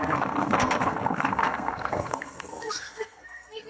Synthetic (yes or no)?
yes